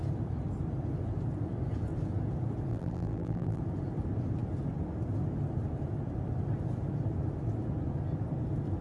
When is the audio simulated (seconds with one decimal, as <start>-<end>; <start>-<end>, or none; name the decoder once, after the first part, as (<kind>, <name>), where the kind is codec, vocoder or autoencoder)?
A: 2.7-3.6 (vocoder, BigVGAN v2)